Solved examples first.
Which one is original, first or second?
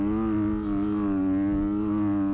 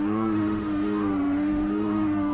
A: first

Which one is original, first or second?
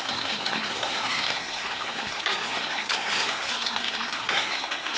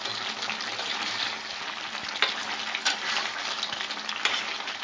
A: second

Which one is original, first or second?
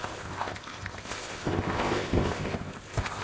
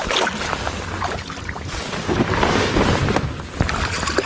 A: second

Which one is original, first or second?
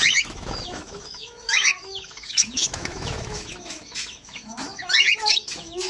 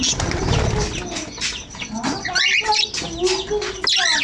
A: second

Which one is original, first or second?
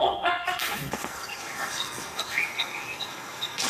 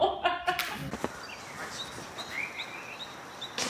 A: second